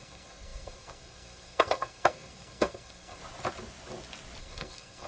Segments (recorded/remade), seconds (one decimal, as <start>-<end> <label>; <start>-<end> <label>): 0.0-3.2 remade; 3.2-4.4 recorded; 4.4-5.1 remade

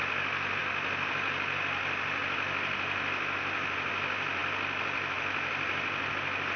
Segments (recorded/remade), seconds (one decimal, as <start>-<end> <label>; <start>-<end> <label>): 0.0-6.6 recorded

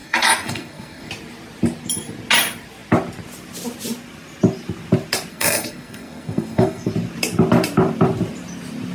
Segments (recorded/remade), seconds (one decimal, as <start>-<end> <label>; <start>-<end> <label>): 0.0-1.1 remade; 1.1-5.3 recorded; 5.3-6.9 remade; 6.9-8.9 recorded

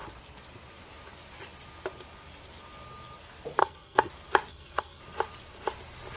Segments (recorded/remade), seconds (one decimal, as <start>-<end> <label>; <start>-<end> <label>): 0.0-3.6 recorded; 3.6-4.1 remade; 4.1-4.5 recorded; 4.5-5.0 remade; 5.0-6.2 recorded